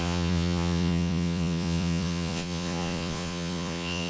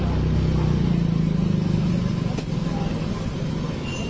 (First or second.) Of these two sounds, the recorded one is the second